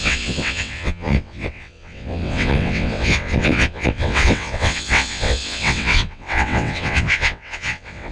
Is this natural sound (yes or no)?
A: no